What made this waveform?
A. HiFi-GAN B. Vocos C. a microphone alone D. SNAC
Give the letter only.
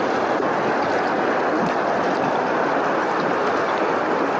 C